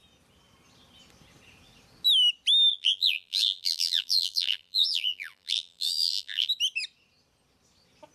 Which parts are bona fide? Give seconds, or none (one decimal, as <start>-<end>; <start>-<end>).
0.0-2.7; 6.5-8.1